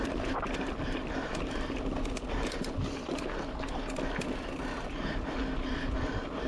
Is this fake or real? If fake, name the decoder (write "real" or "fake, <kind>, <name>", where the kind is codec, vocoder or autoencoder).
real